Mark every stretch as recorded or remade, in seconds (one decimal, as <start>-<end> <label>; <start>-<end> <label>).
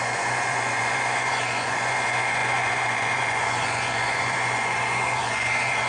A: 0.0-5.9 remade